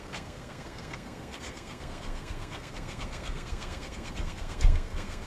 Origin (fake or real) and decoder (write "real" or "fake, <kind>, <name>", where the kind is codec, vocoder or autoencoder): fake, codec, SNAC